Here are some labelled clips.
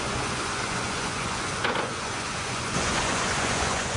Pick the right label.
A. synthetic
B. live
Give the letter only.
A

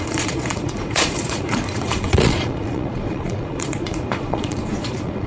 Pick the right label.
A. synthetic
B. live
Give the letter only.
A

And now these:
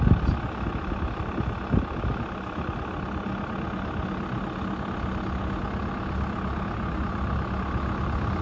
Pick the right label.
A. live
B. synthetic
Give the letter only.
A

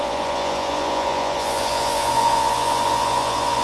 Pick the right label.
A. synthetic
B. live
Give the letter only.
A